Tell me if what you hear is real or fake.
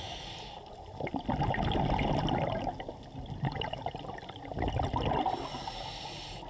real